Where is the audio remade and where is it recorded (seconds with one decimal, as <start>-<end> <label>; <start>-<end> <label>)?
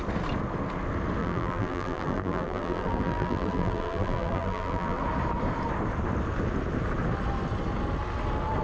0.0-1.2 recorded; 1.2-5.0 remade; 5.0-8.6 recorded